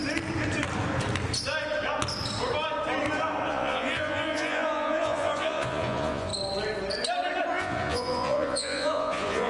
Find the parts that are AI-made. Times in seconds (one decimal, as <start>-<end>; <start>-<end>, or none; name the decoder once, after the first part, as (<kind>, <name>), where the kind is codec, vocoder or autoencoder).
3.5-6.3 (vocoder, Vocos); 7.5-9.5